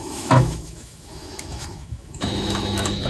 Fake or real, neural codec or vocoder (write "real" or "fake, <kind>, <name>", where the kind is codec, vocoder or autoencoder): fake, autoencoder, DAC-VAE